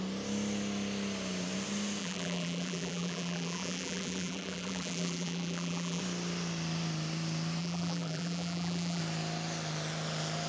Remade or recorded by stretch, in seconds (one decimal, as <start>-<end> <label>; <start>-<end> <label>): 0.0-2.0 recorded; 2.0-6.0 remade; 6.0-7.6 recorded; 7.6-9.0 remade; 9.0-10.5 recorded